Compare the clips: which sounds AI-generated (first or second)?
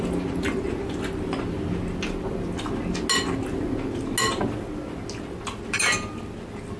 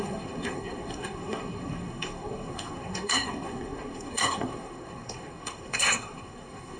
second